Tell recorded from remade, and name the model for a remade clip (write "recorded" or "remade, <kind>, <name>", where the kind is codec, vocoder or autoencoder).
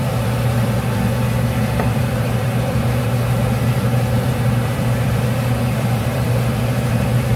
remade, vocoder, BigVGAN v2